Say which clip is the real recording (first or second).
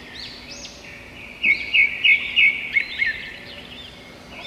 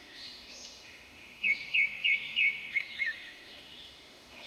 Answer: first